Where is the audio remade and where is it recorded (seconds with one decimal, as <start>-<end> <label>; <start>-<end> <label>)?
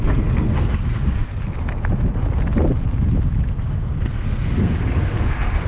0.0-1.3 remade; 1.3-3.6 recorded; 3.6-5.7 remade